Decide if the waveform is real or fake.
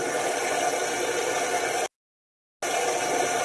real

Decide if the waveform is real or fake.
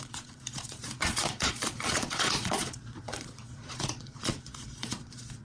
fake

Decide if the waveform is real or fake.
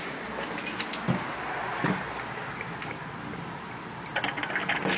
real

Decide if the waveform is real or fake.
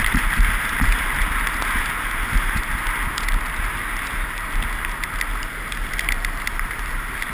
real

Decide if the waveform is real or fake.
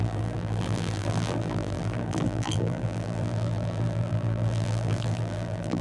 fake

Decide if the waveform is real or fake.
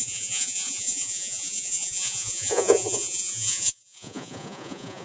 fake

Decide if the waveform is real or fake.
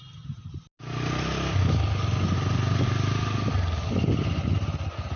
real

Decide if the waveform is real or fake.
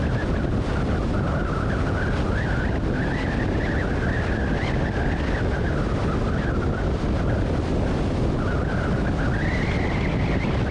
real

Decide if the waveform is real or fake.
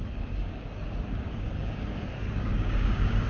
fake